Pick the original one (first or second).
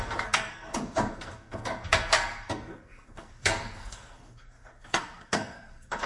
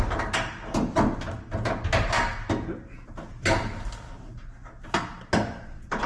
second